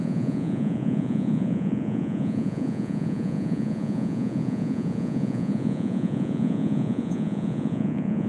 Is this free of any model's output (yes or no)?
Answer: no